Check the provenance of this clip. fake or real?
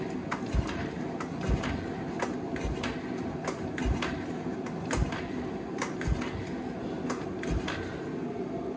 real